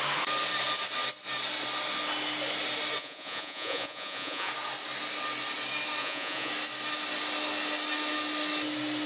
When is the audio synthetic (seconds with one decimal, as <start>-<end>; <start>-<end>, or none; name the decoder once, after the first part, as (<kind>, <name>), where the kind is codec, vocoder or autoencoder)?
3.0-4.5 (vocoder, Vocos); 6.0-6.5